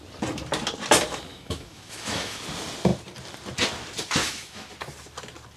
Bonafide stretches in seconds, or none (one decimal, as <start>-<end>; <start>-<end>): 0.0-1.3; 2.4-4.2; 4.7-5.6